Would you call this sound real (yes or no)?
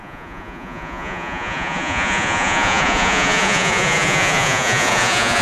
no